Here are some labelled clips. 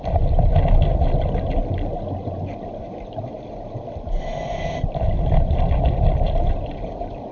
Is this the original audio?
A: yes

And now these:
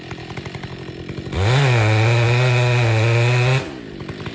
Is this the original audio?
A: yes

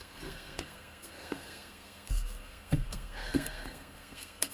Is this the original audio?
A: no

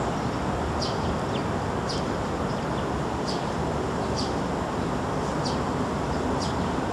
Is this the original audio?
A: yes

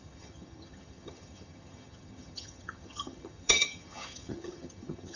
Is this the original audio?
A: no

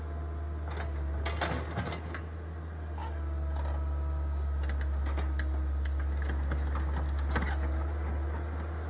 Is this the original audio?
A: yes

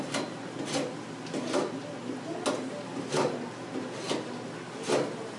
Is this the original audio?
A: yes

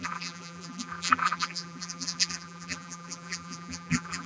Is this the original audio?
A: no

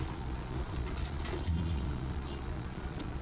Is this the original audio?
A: no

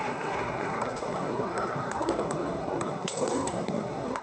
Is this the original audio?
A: no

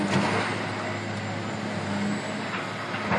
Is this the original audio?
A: yes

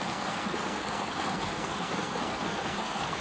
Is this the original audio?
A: no